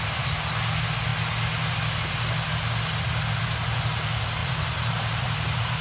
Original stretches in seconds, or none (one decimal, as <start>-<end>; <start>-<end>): 0.0-4.4

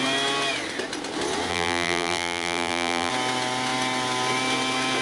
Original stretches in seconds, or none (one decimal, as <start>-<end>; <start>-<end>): 0.0-1.5; 3.1-5.0